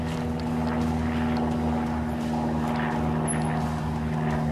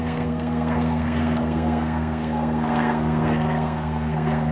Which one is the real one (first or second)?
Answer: first